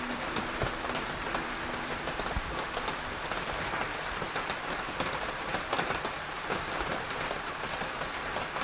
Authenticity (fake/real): fake